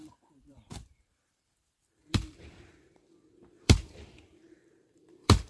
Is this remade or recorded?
remade